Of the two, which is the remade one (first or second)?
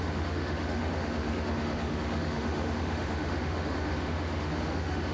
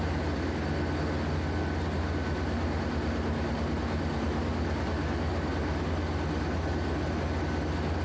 first